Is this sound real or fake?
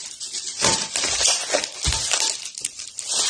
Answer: real